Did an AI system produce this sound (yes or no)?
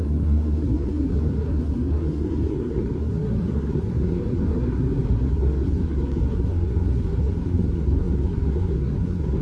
yes